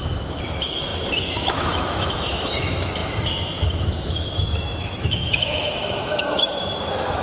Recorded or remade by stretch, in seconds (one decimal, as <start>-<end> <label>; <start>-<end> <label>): 0.0-7.2 remade